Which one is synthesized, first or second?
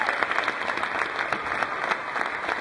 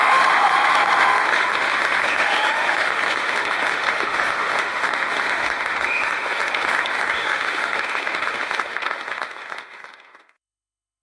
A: second